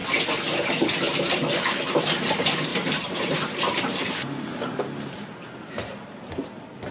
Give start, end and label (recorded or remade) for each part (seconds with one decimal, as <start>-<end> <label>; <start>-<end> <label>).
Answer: 0.0-2.7 recorded; 2.7-6.3 remade; 6.3-6.9 recorded